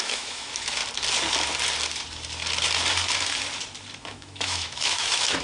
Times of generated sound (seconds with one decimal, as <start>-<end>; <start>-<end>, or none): 0.0-0.8; 4.0-5.4